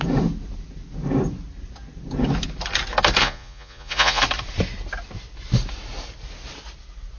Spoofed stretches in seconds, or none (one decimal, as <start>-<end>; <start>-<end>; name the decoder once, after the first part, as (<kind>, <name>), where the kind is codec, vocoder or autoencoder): 3.2-4.2 (vocoder, Vocos)